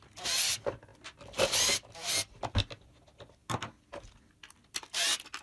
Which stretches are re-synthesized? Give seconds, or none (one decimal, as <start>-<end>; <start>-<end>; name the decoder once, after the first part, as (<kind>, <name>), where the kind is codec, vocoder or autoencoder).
none